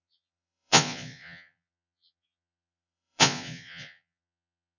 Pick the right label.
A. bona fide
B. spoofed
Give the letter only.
B